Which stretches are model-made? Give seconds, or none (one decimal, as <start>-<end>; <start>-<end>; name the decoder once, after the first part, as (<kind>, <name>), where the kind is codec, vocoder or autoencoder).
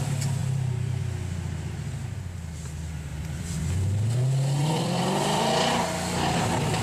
0.4-1.0 (vocoder, BigVGAN v2); 3.1-3.6; 4.6-5.7